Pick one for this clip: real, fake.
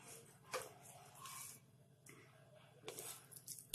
real